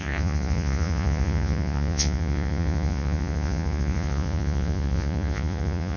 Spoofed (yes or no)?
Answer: yes